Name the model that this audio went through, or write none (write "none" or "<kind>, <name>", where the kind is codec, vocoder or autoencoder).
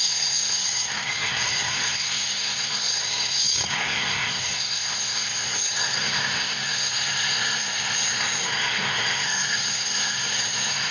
codec, SNAC